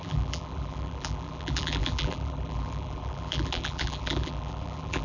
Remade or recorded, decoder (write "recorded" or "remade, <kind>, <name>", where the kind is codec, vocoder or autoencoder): remade, vocoder, BigVGAN v2